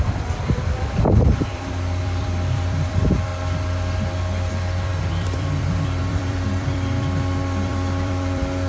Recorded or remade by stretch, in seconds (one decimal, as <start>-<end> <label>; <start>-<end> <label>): 0.0-3.3 remade; 3.3-4.5 recorded; 4.5-8.7 remade